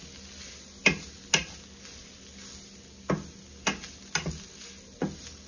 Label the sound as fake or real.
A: real